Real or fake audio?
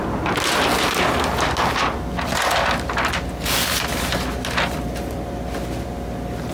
real